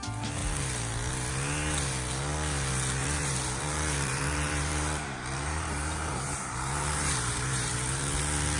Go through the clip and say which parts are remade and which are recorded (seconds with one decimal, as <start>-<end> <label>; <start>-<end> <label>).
0.0-3.0 recorded; 3.0-8.2 remade; 8.2-8.6 recorded